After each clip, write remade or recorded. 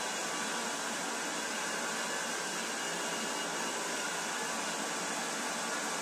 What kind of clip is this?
recorded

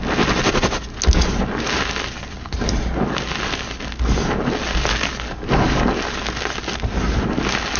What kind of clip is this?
recorded